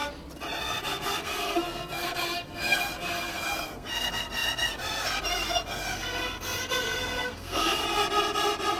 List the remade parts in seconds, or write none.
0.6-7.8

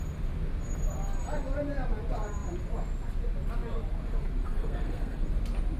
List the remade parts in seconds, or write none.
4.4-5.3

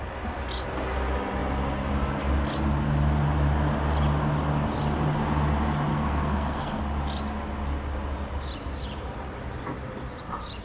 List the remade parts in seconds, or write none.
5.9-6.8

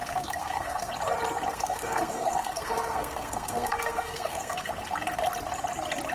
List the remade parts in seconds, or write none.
0.0-0.9; 1.5-4.7

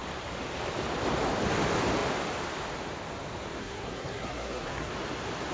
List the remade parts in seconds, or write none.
3.6-4.9

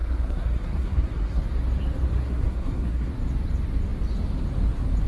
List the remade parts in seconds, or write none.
0.0-1.4; 2.1-3.1

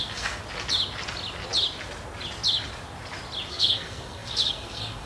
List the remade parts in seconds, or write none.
0.0-0.4; 3.5-5.1